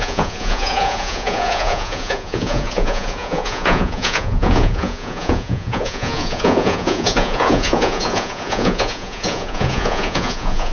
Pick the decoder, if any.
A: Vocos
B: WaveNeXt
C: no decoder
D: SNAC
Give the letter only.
A